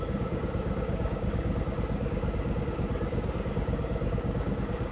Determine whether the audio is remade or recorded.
remade